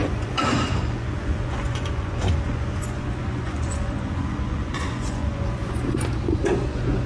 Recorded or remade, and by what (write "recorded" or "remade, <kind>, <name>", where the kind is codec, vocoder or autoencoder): remade, vocoder, Vocos